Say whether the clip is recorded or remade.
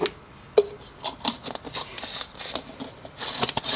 recorded